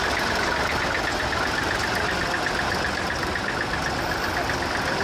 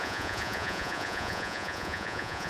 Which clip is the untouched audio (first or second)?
first